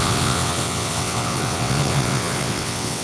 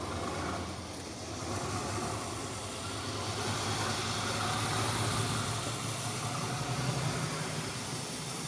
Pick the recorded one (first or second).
second